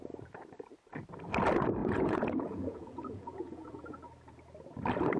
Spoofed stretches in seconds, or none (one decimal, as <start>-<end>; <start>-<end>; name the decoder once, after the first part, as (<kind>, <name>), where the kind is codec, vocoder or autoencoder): 1.8-4.0 (vocoder, Vocos)